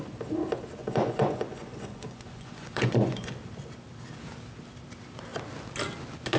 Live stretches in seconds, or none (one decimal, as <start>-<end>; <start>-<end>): 0.0-0.8; 3.3-6.4

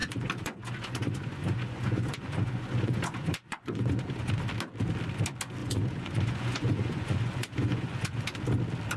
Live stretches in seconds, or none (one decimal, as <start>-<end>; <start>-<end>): 4.3-5.6; 8.2-9.0

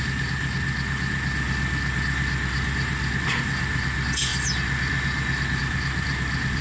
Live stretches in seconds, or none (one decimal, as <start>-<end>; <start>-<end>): 0.0-6.6

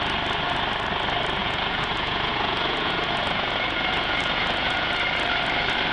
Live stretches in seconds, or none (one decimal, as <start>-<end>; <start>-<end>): 0.0-1.4; 4.9-5.9

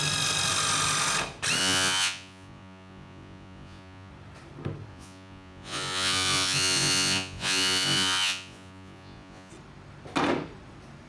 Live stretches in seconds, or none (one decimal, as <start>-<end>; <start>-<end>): 0.0-1.6; 4.1-4.9; 9.5-11.1